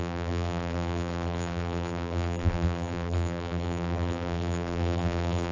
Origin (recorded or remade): remade